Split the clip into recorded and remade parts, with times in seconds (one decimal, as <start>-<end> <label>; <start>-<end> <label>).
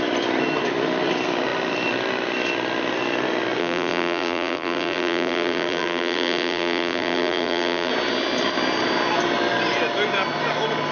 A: 0.0-3.6 recorded; 3.6-7.9 remade; 7.9-10.9 recorded